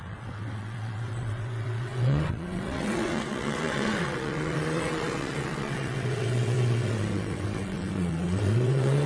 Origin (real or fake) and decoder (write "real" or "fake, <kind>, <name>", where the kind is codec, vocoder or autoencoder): fake, vocoder, WaveNeXt